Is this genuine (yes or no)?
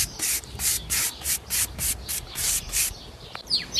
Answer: no